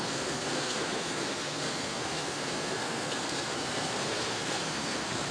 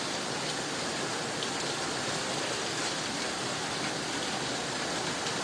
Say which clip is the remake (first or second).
first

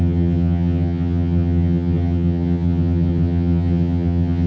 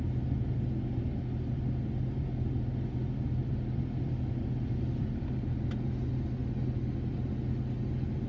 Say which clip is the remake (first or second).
first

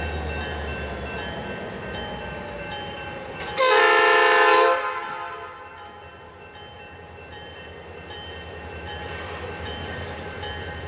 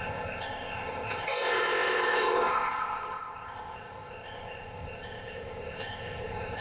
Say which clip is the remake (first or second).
second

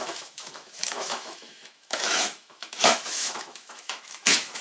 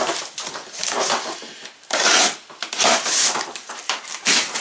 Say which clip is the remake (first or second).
first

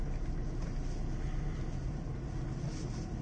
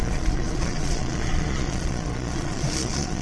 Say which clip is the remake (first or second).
second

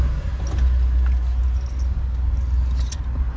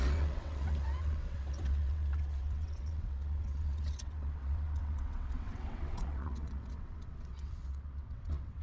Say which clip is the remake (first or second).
second